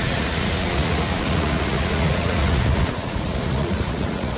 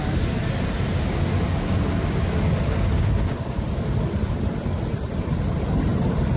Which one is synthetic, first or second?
first